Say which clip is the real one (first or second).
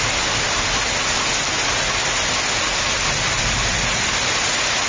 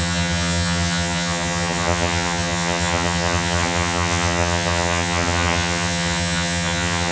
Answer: first